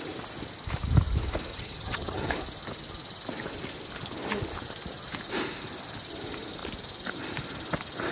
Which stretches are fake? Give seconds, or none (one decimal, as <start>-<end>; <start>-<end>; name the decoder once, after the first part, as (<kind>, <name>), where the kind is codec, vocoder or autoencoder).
1.5-2.3 (vocoder, HiFi-GAN)